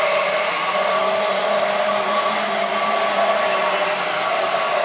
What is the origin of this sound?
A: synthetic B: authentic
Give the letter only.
A